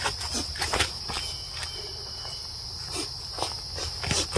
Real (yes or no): yes